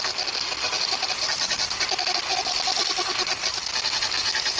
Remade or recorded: recorded